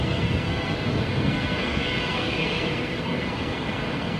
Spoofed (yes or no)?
yes